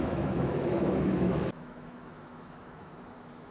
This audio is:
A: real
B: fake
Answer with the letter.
B